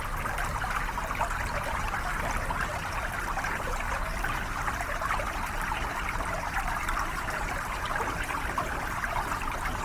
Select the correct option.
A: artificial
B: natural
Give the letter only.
B